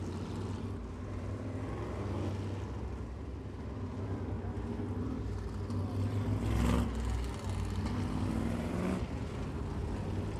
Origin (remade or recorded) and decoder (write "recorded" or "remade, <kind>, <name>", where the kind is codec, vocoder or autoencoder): recorded